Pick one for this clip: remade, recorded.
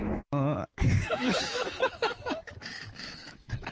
remade